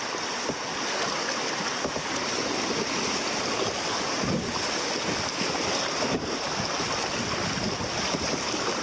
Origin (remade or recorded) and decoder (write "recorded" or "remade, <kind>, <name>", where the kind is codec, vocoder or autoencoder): recorded